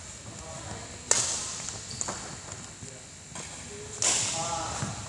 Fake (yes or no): no